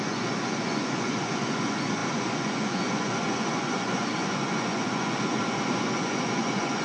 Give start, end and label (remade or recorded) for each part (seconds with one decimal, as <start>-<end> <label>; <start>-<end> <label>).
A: 0.0-6.8 remade